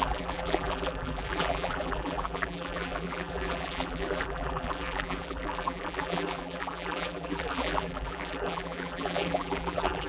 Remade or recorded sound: remade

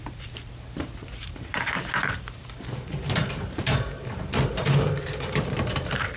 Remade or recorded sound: remade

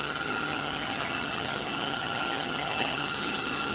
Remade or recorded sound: remade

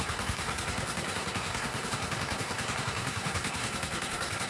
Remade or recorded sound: remade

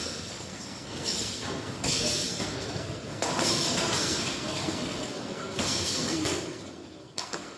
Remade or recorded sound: remade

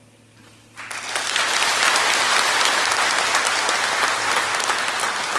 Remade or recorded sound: recorded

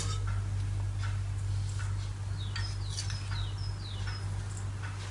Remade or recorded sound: recorded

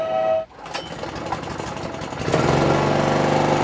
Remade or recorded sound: recorded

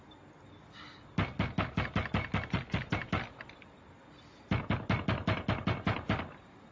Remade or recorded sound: recorded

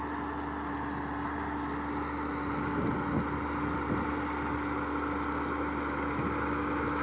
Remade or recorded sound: recorded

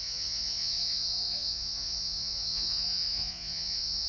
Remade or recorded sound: remade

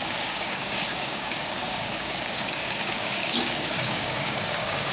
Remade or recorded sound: remade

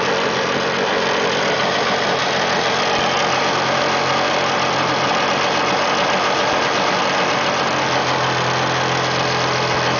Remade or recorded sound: recorded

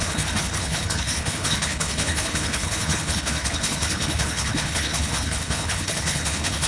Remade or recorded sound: remade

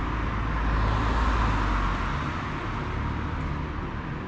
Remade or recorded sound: recorded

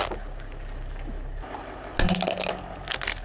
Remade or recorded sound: recorded